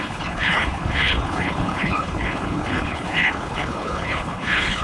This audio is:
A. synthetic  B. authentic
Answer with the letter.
A